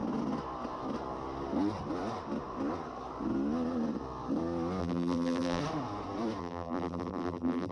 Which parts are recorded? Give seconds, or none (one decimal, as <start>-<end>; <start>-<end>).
0.0-4.8; 5.6-6.4